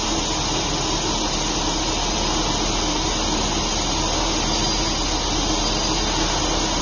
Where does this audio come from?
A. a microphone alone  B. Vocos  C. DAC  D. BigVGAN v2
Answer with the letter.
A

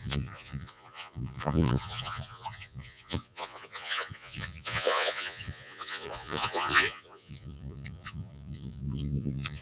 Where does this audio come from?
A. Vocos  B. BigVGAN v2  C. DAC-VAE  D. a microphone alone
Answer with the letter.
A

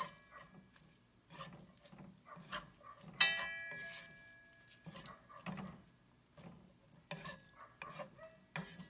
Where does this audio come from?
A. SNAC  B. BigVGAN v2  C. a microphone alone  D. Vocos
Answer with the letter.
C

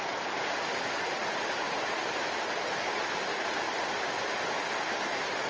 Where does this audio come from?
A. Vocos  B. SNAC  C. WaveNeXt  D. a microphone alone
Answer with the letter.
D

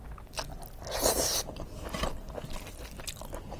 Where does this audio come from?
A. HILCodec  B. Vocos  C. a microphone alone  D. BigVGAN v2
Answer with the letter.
C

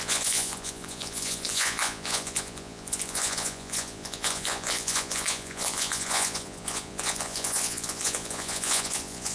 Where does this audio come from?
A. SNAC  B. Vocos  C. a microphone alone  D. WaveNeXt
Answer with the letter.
B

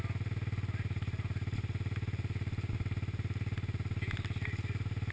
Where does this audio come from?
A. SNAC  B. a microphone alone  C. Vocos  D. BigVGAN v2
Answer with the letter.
B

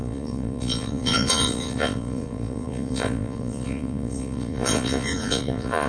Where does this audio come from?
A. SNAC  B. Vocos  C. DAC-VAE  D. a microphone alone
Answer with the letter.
B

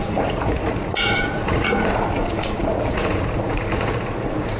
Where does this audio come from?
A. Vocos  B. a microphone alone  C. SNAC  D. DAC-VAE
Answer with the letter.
A